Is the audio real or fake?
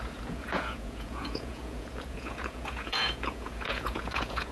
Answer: fake